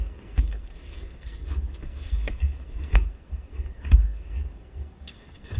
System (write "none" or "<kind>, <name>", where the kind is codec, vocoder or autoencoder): codec, SNAC